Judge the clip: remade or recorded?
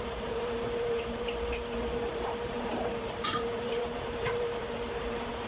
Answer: remade